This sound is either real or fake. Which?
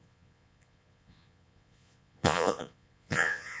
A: fake